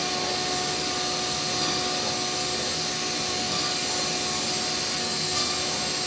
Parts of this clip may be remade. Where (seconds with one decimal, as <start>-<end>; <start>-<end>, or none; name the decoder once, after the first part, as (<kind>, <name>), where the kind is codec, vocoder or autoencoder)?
4.9-5.5 (codec, SNAC)